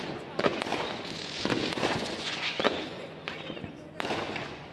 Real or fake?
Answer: fake